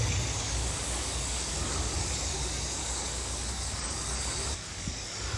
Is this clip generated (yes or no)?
yes